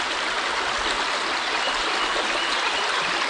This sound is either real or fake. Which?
real